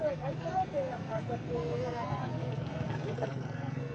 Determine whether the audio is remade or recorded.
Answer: remade